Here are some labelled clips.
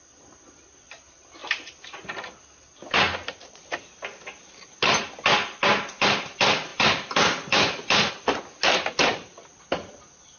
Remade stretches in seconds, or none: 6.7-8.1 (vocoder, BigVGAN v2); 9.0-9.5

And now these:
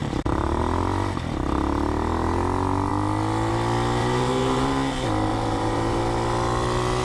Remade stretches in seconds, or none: 0.0-0.6 (vocoder, BigVGAN v2); 4.0-4.7; 5.3-6.0

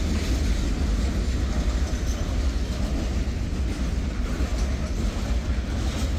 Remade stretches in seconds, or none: none

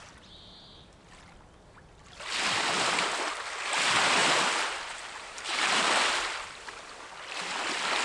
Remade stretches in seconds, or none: 4.2-6.2 (vocoder, BigVGAN v2)

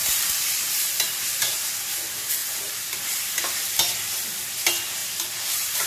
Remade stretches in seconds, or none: 0.0-1.8 (vocoder, BigVGAN v2); 2.4-3.4; 5.0-5.9

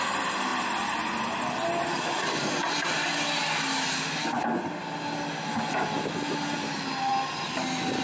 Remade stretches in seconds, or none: none

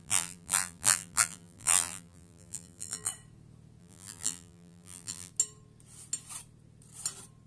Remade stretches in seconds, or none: 0.0-3.1 (vocoder, BigVGAN v2); 3.8-5.3